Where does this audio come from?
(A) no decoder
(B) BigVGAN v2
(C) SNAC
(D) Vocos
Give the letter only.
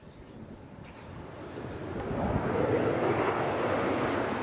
A